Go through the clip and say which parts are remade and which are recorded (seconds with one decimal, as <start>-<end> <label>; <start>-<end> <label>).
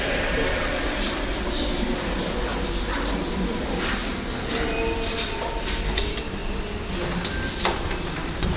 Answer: 0.0-2.5 remade; 2.5-3.3 recorded; 3.3-4.0 remade; 4.0-4.6 recorded; 4.6-6.4 remade; 6.4-7.6 recorded; 7.6-8.6 remade